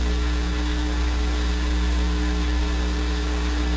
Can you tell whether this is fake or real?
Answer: fake